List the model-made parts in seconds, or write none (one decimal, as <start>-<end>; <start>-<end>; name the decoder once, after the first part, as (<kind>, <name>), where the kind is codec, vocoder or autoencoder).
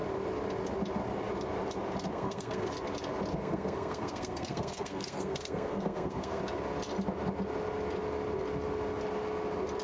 2.1-2.7 (codec, SNAC); 3.3-6.4